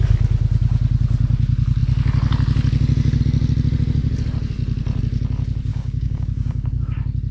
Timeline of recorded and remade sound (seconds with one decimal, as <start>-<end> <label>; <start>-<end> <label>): 0.0-5.7 recorded; 5.7-6.8 remade; 6.8-7.3 recorded